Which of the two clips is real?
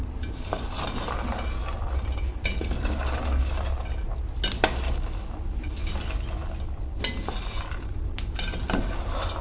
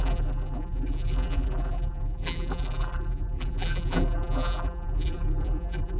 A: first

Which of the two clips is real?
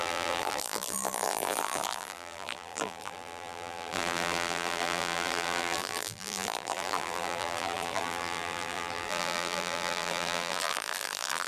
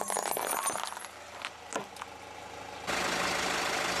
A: second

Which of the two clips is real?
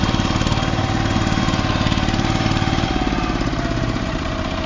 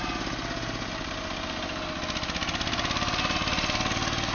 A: second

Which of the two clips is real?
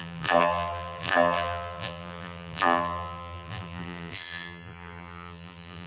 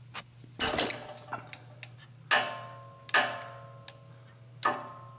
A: second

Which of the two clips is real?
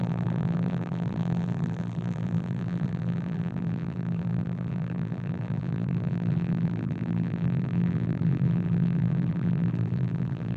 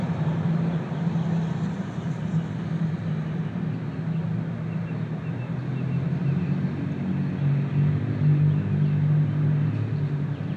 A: second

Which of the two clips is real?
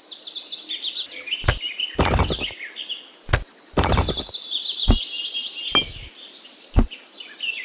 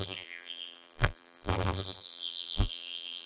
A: first